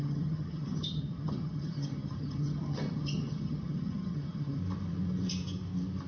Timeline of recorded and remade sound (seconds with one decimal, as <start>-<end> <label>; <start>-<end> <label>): 0.0-4.6 remade; 4.6-6.1 recorded